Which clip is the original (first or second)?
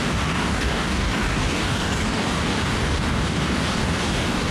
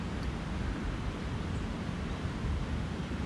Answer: second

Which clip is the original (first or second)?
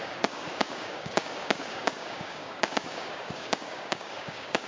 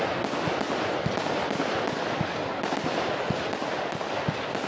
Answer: second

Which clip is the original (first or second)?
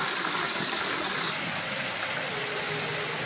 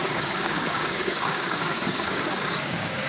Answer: first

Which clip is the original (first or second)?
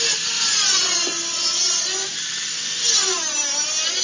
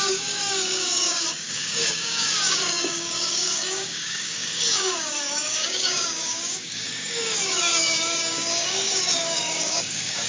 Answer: first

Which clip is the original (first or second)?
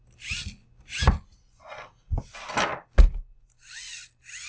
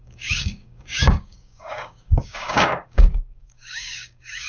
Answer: first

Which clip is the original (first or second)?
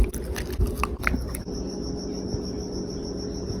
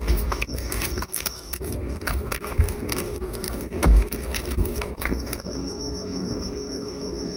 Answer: first